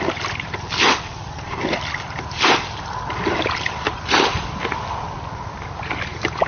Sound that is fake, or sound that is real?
real